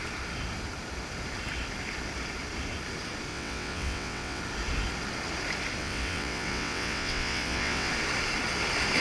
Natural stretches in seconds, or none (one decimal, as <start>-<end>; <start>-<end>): 0.0-3.3; 4.4-5.8; 7.9-9.0

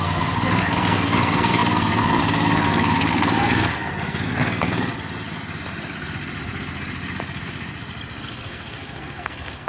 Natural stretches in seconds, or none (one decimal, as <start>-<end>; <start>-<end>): 4.9-8.2

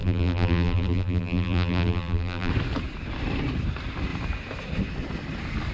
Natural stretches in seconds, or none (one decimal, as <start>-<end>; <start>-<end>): 2.5-5.7

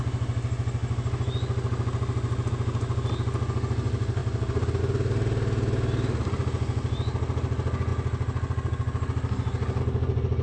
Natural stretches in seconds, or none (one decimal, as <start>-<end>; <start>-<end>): 0.0-10.4

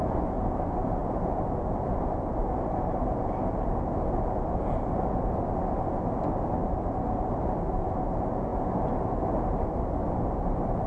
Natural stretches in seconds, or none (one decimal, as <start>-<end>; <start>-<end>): 0.0-1.0; 3.8-10.9

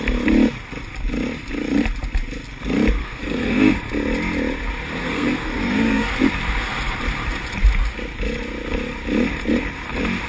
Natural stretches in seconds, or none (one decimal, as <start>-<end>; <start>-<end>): 0.0-3.0; 3.7-5.0; 6.1-10.3